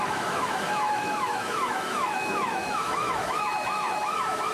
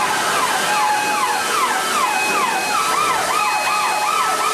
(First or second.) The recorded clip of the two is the second